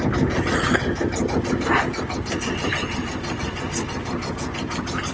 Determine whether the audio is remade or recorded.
recorded